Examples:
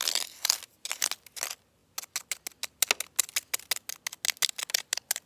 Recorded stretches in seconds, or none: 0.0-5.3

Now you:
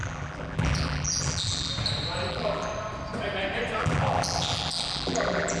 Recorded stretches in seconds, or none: 1.7-2.3; 2.7-3.8

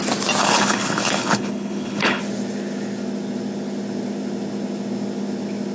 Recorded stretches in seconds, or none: 0.0-0.4; 2.2-5.7

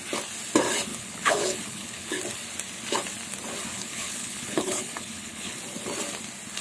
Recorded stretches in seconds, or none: 0.0-0.9; 2.2-3.7; 5.6-6.6

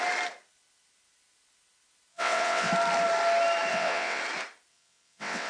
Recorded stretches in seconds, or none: 0.0-2.1; 2.7-3.7; 4.2-4.7

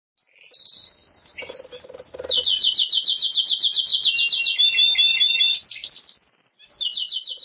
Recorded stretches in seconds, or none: 0.0-7.4

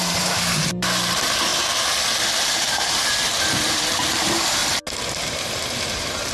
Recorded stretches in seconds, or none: 1.5-2.5; 4.6-5.2

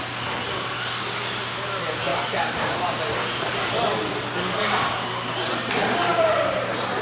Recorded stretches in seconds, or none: 0.0-2.1; 3.0-4.6; 5.5-6.1